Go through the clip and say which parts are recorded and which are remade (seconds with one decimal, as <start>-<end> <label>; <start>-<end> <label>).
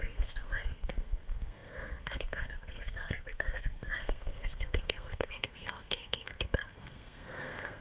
0.0-7.8 remade